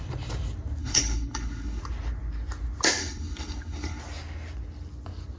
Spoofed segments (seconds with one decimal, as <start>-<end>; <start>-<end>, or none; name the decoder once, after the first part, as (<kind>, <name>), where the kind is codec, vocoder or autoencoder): 0.8-1.8 (codec, HILCodec); 3.0-4.0

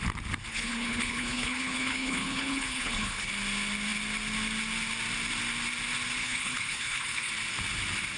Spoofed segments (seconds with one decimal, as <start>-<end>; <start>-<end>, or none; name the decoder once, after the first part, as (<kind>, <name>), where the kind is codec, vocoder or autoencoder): 0.5-3.3 (codec, HILCodec); 6.2-7.3

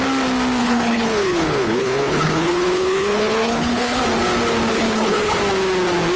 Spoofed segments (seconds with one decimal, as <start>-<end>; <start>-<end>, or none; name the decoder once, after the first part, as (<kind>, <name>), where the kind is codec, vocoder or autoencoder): 0.6-4.0 (codec, HILCodec); 4.7-5.4

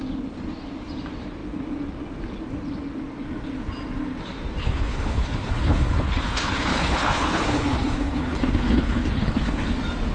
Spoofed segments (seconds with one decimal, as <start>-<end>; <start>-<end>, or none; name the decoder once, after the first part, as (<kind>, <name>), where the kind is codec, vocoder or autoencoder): 4.6-9.7 (codec, HILCodec)

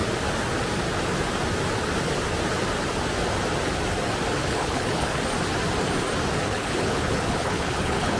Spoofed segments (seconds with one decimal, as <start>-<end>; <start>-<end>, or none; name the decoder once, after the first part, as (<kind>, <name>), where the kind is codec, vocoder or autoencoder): 4.4-5.2 (codec, HILCodec); 6.5-8.2

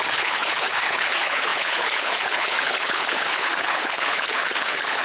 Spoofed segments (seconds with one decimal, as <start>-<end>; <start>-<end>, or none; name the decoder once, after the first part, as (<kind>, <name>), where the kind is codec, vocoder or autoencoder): 0.0-5.0 (codec, HILCodec)